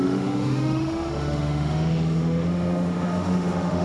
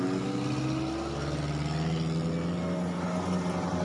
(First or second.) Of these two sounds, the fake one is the first